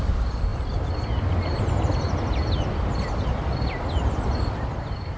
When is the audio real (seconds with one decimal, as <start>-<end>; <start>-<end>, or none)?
0.0-5.2